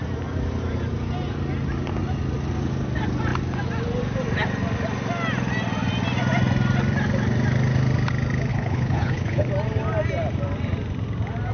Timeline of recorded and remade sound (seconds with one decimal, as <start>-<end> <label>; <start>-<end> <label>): 0.0-8.5 recorded; 8.5-9.5 remade; 9.5-11.5 recorded